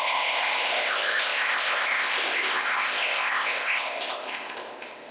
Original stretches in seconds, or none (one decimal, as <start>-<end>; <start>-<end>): none